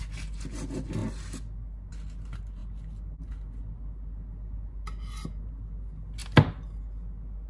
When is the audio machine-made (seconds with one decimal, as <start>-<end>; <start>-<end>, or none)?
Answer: none